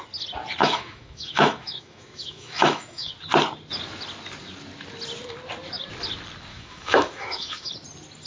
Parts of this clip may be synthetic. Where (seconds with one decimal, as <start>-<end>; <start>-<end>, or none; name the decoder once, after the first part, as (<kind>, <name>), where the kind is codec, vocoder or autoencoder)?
0.6-3.1 (autoencoder, DAC-VAE); 6.5-7.7

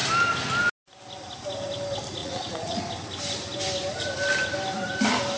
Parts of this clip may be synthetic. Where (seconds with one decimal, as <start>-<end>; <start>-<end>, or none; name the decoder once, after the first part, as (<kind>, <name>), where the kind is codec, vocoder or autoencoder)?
2.2-2.8 (vocoder, Vocos)

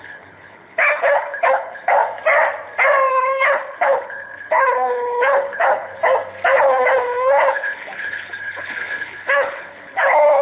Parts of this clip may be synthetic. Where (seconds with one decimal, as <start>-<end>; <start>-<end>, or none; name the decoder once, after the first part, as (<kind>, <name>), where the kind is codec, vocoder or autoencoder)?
0.0-2.0 (codec, HILCodec); 3.1-6.0; 6.6-10.4

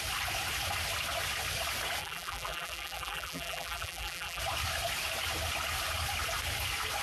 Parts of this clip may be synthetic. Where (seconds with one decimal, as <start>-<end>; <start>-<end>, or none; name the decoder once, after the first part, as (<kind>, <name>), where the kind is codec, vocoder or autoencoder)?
2.0-4.4 (vocoder, BigVGAN v2)

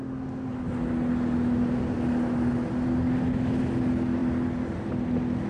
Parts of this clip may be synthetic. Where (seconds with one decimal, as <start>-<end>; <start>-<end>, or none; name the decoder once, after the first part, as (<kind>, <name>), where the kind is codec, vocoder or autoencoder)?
none